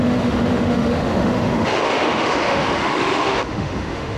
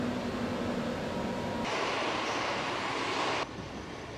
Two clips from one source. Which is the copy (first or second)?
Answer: first